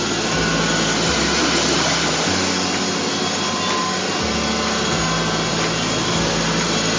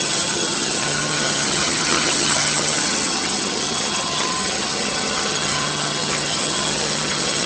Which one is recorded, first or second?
first